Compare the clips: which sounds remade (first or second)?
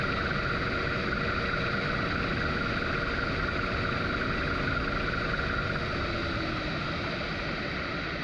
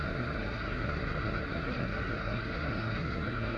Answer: second